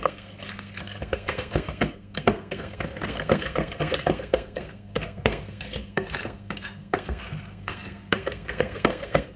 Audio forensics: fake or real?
fake